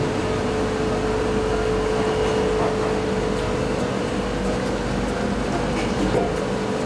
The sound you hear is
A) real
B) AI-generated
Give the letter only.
A